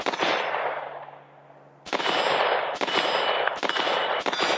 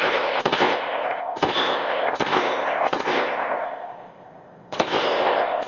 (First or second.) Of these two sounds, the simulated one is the second